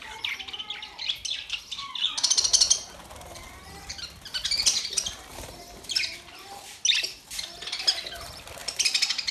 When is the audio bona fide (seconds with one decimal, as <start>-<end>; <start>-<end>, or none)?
0.0-9.3